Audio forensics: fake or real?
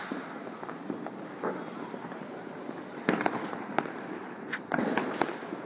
fake